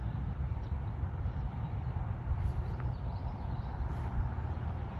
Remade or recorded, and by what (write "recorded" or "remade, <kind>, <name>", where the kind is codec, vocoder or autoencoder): recorded